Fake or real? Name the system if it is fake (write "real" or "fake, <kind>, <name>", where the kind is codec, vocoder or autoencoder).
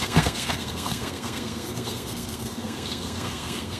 fake, codec, SNAC